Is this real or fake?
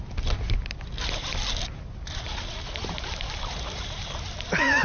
real